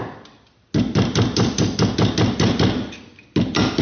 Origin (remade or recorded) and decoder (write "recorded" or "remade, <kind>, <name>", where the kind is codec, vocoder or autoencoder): recorded